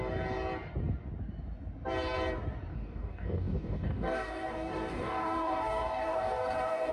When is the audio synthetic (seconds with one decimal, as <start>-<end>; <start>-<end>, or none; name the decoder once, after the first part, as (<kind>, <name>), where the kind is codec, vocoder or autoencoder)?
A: 2.7-6.9 (codec, DAC)